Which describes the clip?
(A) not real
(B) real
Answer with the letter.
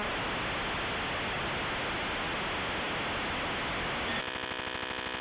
B